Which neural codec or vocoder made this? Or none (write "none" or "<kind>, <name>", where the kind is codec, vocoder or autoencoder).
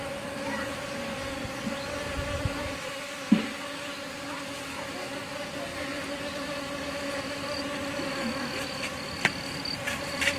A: none